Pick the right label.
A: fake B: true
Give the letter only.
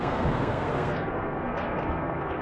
A